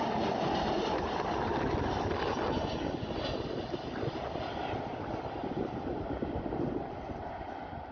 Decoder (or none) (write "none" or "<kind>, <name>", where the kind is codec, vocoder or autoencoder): none